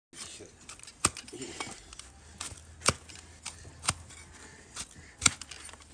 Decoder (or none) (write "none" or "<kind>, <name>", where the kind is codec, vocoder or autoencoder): none